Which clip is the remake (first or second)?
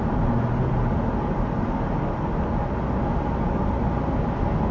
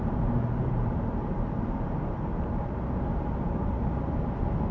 second